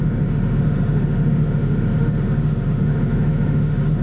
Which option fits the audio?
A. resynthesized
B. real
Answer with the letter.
A